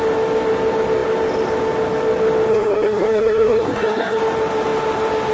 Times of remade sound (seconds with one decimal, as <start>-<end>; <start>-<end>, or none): 2.5-4.2